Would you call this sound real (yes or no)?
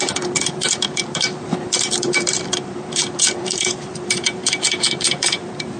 no